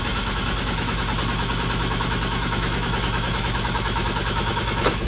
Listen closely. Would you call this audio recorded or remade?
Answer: remade